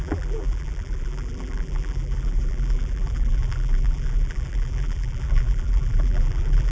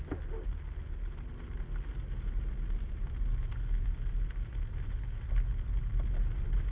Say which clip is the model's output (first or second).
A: first